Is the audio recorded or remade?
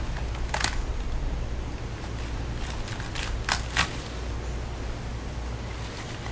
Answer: recorded